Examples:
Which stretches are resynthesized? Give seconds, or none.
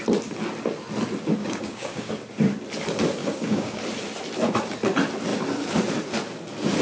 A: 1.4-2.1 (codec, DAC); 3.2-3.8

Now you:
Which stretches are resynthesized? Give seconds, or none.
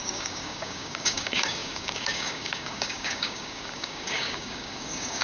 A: 0.0-5.2 (codec, DAC)